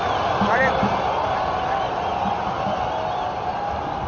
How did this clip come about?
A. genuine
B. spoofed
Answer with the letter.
A